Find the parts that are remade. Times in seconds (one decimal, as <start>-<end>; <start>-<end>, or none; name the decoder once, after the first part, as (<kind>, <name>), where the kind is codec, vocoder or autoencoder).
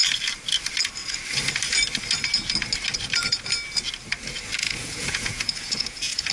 4.6-6.3 (vocoder, Vocos)